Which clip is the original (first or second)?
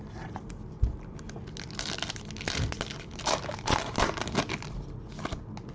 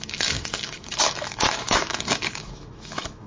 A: first